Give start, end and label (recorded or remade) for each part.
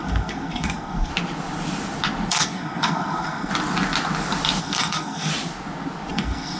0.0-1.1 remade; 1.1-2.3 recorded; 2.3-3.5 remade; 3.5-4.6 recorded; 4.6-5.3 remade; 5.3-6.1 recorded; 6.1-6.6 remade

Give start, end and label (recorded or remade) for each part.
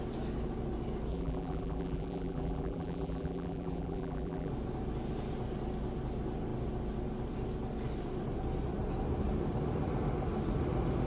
0.0-1.1 recorded; 1.1-4.5 remade; 4.5-11.1 recorded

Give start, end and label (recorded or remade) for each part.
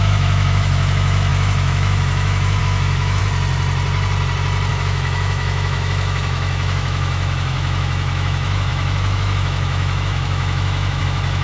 0.0-3.2 remade; 3.2-4.7 recorded; 4.7-11.4 remade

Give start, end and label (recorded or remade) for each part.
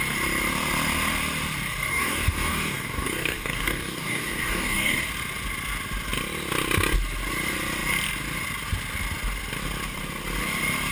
0.0-1.9 recorded; 1.9-5.1 remade; 5.1-10.9 recorded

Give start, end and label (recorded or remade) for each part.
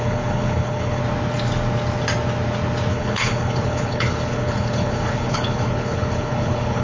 0.0-1.0 remade; 1.0-2.9 recorded; 2.9-6.8 remade